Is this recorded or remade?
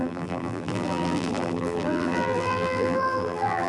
remade